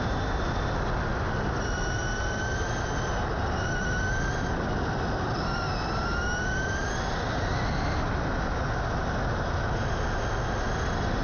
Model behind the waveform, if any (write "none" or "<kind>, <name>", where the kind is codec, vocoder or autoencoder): none